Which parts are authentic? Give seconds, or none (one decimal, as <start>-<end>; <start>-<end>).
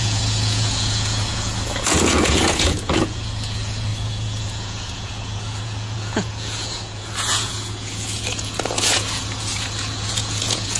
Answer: none